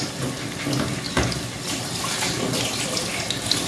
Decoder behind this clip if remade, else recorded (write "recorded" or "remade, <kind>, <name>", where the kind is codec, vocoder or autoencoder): recorded